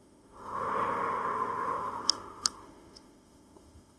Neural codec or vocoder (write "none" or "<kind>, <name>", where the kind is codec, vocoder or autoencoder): autoencoder, DAC-VAE